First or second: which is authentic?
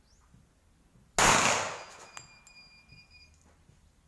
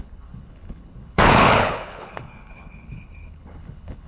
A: first